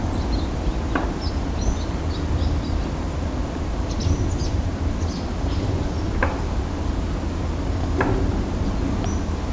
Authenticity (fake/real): real